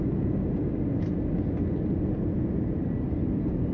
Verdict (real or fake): real